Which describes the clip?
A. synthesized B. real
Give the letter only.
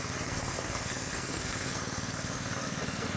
A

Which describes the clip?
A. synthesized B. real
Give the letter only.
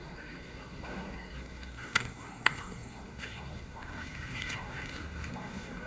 A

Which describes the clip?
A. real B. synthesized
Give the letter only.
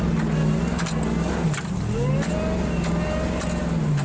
A